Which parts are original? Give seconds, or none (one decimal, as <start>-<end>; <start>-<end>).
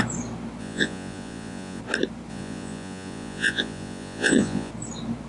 0.0-0.6; 1.8-2.3; 4.7-5.3